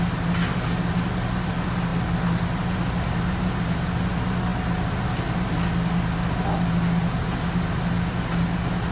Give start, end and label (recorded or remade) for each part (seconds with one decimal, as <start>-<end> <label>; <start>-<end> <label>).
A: 0.0-8.9 recorded